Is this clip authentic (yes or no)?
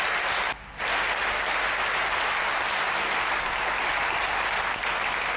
yes